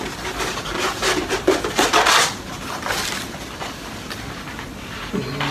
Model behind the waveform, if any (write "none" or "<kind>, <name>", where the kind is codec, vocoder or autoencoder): none